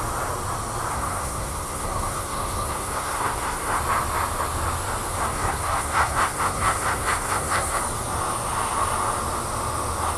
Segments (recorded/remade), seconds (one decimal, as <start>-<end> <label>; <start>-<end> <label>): 0.0-0.9 recorded; 0.9-3.8 remade; 3.8-5.1 recorded; 5.1-7.8 remade; 7.8-10.2 recorded